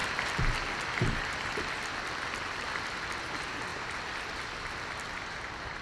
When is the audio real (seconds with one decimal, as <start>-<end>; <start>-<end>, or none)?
0.0-5.8